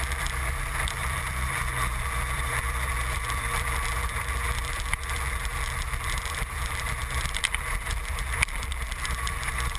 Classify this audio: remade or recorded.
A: remade